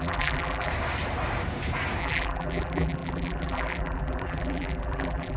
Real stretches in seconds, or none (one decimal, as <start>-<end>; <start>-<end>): 0.7-2.0